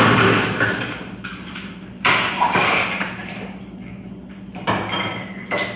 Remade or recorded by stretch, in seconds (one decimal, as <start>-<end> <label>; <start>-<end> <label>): 0.0-1.3 recorded; 1.3-3.2 remade; 3.2-5.8 recorded

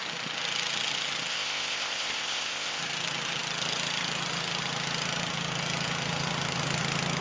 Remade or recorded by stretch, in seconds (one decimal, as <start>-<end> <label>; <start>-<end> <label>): 0.0-1.3 recorded; 1.3-2.8 remade; 2.8-7.2 recorded

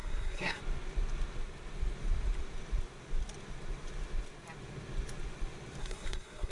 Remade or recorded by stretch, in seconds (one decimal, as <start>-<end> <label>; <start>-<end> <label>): 0.0-0.6 remade; 0.6-5.8 recorded; 5.8-6.5 remade

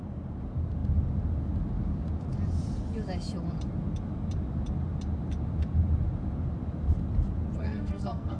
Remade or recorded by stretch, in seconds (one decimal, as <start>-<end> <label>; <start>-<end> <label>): 0.0-7.6 recorded; 7.6-8.4 remade

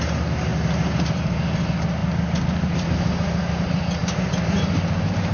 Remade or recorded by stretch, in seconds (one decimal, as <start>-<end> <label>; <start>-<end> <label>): 0.0-0.5 recorded; 0.5-1.4 remade; 1.4-4.0 recorded; 4.0-5.3 remade

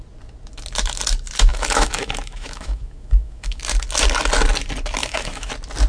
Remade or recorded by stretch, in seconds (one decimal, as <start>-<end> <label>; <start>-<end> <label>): 0.0-1.5 recorded; 1.5-3.6 remade; 3.6-5.0 recorded; 5.0-5.5 remade; 5.5-5.9 recorded